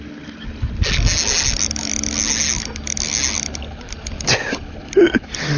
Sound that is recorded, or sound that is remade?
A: recorded